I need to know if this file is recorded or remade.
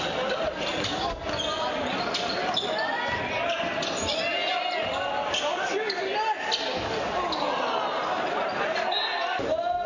recorded